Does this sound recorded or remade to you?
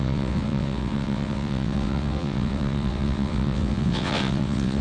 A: remade